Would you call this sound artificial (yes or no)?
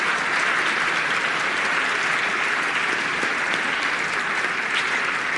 no